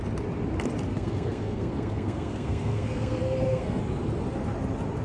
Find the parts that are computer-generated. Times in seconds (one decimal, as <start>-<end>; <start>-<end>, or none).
0.9-3.8